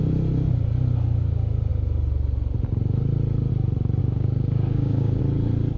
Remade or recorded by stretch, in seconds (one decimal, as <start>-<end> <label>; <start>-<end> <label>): 0.0-4.0 recorded; 4.0-5.2 remade; 5.2-5.8 recorded